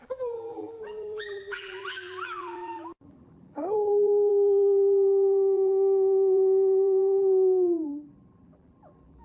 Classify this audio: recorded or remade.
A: remade